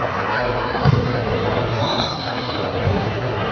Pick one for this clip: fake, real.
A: fake